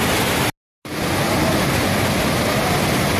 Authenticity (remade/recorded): recorded